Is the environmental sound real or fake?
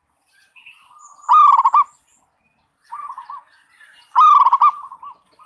real